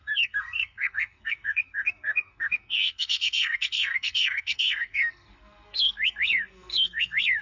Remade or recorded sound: remade